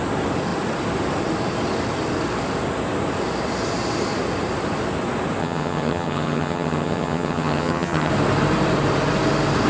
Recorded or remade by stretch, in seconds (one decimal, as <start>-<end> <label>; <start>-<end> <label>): 0.0-5.4 recorded; 5.4-8.1 remade; 8.1-9.7 recorded